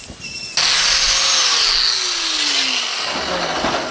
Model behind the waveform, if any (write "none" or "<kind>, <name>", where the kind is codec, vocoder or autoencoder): none